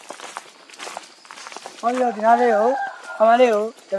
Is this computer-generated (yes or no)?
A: no